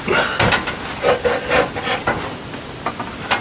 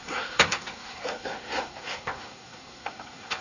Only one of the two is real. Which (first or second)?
first